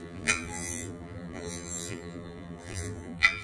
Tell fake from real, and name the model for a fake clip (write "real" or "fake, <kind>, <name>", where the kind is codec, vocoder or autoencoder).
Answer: fake, vocoder, BigVGAN v2